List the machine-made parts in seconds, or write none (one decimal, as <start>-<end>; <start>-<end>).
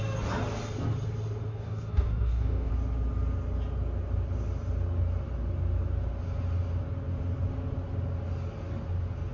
1.5-2.7